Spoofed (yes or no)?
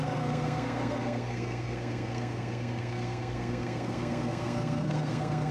yes